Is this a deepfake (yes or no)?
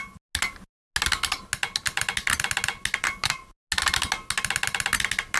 no